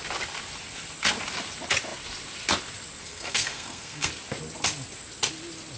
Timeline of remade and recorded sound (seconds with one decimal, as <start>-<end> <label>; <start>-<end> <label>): 0.0-3.0 recorded; 3.0-4.1 remade; 4.1-5.8 recorded